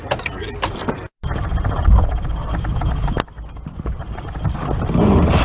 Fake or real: real